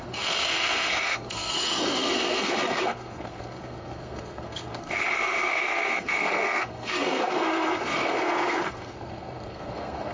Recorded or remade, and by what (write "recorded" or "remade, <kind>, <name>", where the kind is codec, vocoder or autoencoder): remade, codec, SNAC